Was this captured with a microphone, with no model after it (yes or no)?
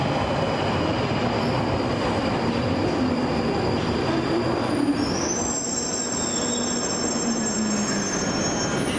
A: yes